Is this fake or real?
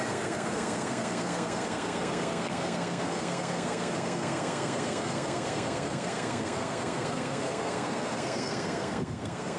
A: fake